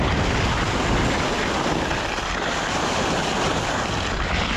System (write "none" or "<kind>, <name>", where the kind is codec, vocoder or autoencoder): none